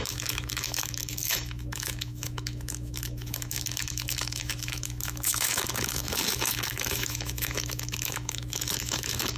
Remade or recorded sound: remade